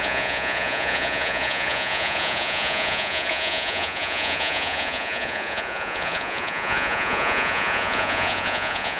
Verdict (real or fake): fake